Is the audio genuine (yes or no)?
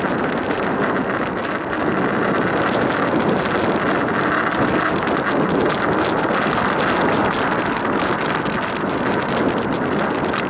yes